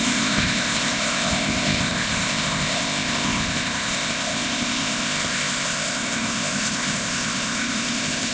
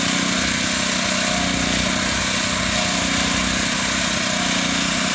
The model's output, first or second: first